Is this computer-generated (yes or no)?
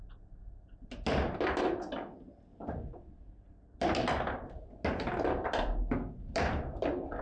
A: no